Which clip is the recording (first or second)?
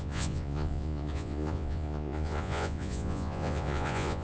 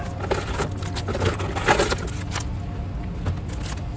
second